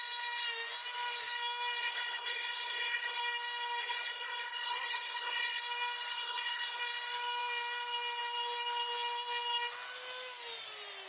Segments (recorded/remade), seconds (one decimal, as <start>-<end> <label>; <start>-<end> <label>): 0.0-1.8 recorded; 1.8-3.2 remade; 3.2-3.8 recorded; 3.8-5.6 remade; 5.6-6.1 recorded; 6.1-6.8 remade; 6.8-11.1 recorded